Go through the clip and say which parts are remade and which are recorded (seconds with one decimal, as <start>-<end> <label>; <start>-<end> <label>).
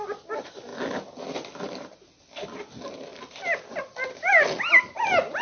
0.0-5.4 recorded